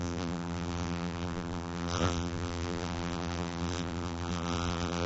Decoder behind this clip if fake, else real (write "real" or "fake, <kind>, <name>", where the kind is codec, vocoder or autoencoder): fake, vocoder, BigVGAN v2